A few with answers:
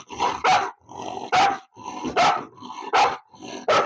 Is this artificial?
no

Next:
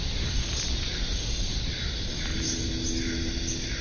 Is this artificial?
no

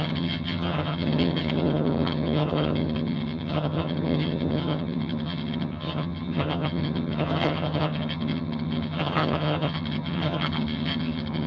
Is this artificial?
yes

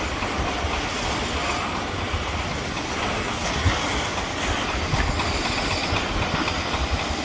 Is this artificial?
no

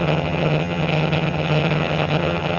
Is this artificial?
yes